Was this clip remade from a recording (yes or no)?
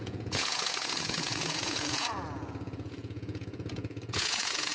yes